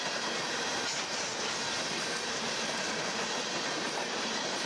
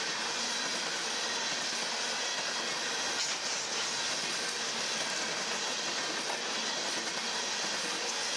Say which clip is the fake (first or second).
first